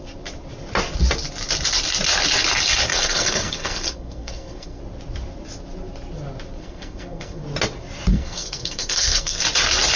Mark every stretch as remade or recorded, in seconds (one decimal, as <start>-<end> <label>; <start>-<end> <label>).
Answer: 0.0-2.9 recorded; 2.9-4.8 remade; 4.8-6.6 recorded; 6.6-7.4 remade; 7.4-8.1 recorded; 8.1-9.4 remade; 9.4-10.0 recorded